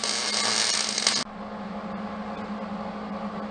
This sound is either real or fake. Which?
real